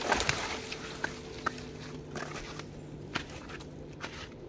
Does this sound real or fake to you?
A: real